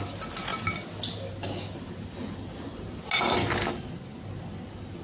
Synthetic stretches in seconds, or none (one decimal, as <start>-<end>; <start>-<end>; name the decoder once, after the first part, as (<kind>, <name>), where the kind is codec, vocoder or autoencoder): none

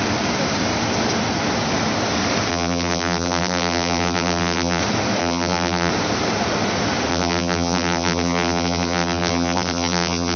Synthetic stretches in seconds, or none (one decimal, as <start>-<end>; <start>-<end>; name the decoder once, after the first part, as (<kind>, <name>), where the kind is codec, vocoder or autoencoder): 2.5-4.8 (vocoder, BigVGAN v2); 5.2-5.9; 7.1-10.4

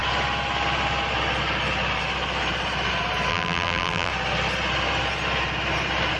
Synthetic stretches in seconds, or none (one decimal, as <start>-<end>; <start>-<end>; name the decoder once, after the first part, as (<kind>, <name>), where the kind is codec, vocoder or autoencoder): 3.3-4.1 (vocoder, BigVGAN v2)

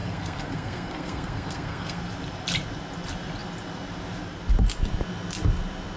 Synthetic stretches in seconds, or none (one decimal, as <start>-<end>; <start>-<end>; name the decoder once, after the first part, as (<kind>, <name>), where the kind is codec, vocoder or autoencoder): 0.0-2.0 (codec, SNAC)